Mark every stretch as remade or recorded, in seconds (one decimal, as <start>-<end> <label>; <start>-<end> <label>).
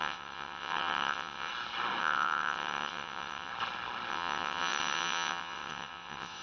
0.0-1.5 remade; 1.5-2.0 recorded; 2.0-3.5 remade; 3.5-4.1 recorded; 4.1-6.4 remade